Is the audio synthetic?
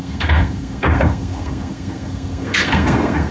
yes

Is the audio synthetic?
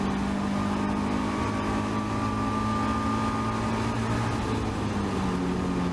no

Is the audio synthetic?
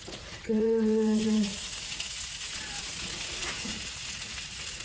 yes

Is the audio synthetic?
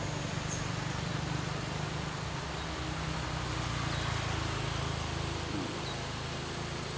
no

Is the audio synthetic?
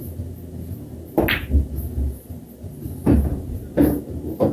no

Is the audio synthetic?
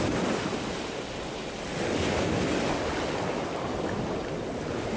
no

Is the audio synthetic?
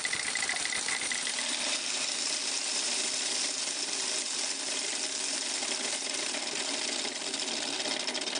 no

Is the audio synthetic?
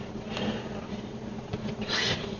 yes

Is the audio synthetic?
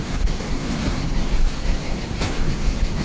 yes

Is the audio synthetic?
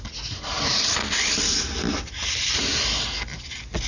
no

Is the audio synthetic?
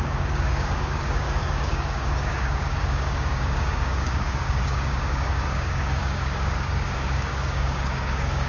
yes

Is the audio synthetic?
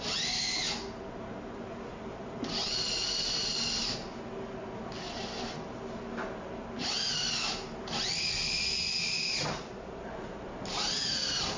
no